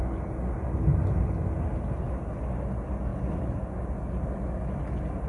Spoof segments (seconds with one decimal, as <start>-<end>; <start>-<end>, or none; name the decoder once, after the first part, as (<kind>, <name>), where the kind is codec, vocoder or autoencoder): none